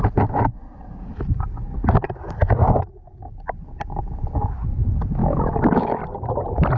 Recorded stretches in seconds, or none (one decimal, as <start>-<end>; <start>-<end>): 0.0-5.2; 6.0-6.8

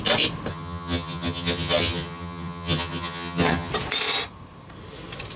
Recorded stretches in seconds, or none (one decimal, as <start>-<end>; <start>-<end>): 0.0-0.5; 3.7-5.4